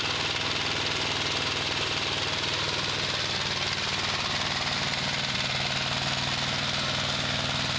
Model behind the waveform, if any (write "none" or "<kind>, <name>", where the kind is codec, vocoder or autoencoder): none